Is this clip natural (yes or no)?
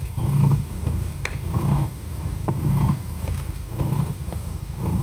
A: no